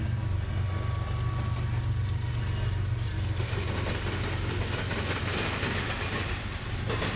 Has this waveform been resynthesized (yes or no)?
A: no